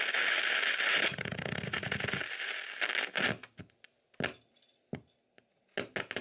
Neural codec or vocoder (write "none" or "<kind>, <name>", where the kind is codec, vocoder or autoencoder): none